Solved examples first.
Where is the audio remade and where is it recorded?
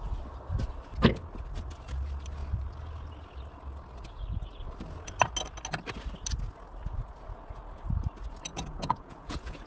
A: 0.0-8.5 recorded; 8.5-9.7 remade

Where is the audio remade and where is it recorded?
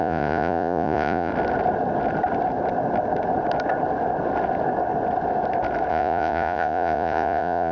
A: 0.0-1.3 remade; 1.3-5.9 recorded; 5.9-7.7 remade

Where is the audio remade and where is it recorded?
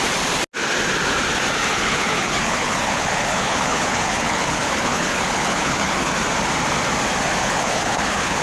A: 0.0-1.7 recorded; 1.7-6.1 remade; 6.1-7.4 recorded; 7.4-8.4 remade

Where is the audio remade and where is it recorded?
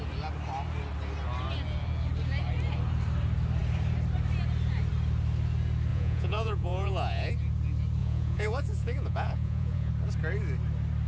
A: 0.0-5.9 recorded; 5.9-7.3 remade; 7.3-8.0 recorded; 8.0-9.9 remade; 9.9-11.1 recorded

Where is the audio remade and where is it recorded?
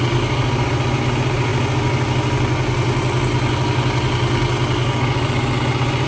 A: 0.0-6.1 recorded